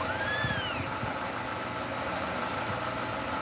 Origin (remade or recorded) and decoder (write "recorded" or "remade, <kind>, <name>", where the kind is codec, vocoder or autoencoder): recorded